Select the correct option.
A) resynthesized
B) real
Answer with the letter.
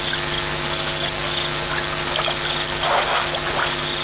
B